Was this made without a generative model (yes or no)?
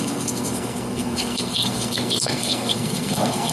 no